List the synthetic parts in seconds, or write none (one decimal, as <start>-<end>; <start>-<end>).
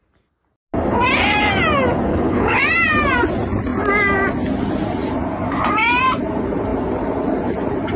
2.1-2.6